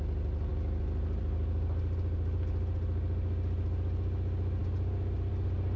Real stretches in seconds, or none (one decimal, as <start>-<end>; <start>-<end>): 0.0-5.8